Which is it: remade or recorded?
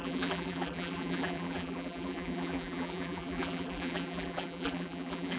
remade